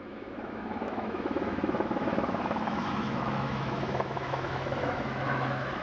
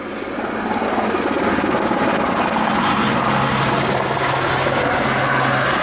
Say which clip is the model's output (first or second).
first